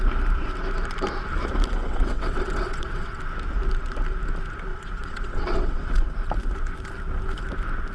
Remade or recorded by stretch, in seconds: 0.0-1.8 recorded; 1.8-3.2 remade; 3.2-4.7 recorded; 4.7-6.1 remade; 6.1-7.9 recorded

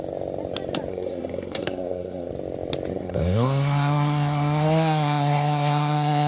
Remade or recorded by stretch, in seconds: 0.0-0.9 recorded; 0.9-2.3 remade; 2.3-2.9 recorded; 2.9-6.3 remade